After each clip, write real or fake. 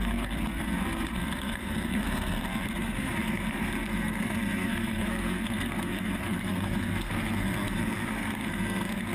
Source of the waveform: fake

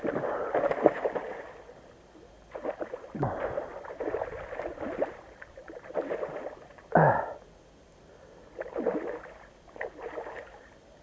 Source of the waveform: real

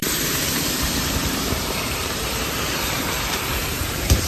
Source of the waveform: fake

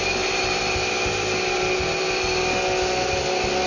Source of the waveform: real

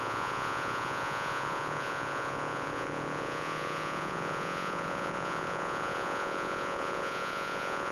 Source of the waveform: fake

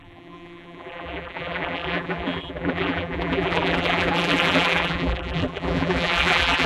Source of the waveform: fake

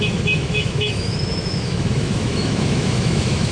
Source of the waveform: fake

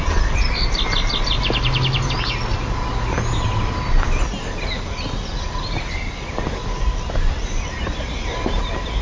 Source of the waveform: real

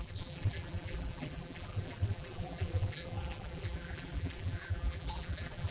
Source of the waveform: fake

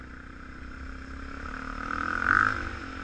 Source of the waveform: real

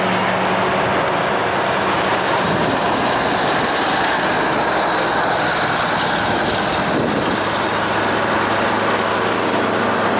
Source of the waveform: real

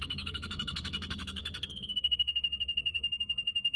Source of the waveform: fake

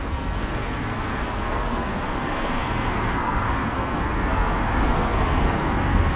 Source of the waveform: fake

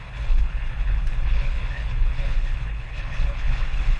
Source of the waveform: fake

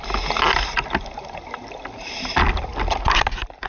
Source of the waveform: real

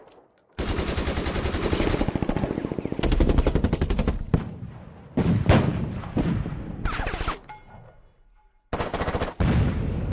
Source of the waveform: real